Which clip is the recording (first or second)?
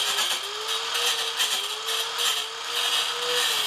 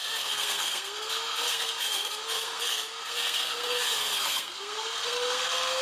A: first